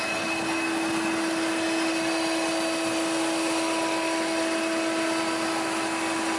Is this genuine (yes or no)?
yes